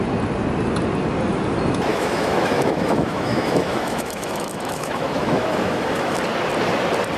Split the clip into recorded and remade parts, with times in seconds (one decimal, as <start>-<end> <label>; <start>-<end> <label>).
0.0-1.9 recorded; 1.9-6.2 remade; 6.2-7.2 recorded